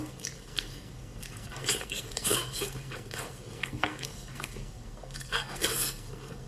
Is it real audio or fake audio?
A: fake